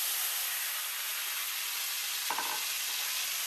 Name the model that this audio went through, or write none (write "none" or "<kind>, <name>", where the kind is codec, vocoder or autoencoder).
none